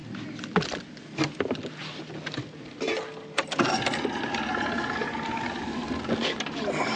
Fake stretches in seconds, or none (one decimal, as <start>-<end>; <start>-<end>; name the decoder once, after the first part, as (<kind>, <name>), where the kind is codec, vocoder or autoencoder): none